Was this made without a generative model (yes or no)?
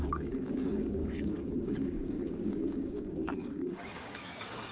no